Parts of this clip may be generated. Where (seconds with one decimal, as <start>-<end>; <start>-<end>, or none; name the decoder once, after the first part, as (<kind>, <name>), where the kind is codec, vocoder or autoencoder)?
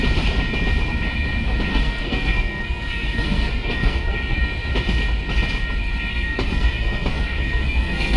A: 1.7-4.4 (codec, SNAC); 6.1-8.2